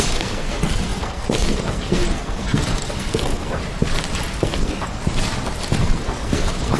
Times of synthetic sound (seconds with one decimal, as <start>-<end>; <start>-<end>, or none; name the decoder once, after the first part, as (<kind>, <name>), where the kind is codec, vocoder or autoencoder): 0.0-3.6 (codec, SNAC); 4.4-5.0; 5.7-6.8